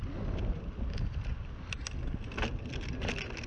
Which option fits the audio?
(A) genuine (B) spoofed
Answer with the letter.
A